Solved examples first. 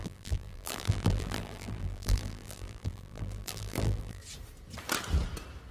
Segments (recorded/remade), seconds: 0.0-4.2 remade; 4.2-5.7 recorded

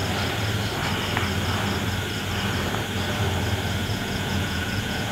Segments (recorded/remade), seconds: 0.0-3.8 recorded; 3.8-5.1 remade

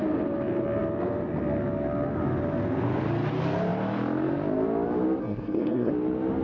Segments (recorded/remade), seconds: 0.0-5.2 recorded; 5.2-5.9 remade; 5.9-6.4 recorded

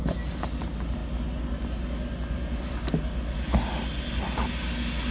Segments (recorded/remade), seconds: 0.0-5.1 recorded

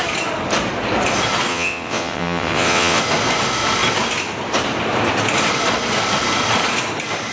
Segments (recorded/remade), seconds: 0.0-1.5 recorded; 1.5-3.0 remade; 3.0-7.3 recorded

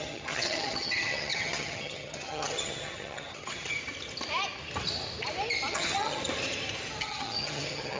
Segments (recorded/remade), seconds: 0.0-3.8 remade; 3.8-5.7 recorded; 5.7-6.2 remade; 6.2-7.0 recorded; 7.0-8.0 remade

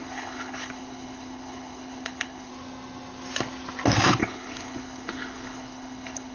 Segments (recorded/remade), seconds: 0.0-2.5 remade; 2.5-4.2 recorded; 4.2-6.3 remade

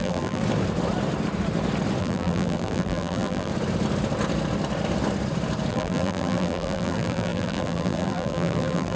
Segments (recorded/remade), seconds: 0.0-0.4 remade; 0.4-2.0 recorded; 2.0-3.5 remade; 3.5-5.7 recorded; 5.7-9.0 remade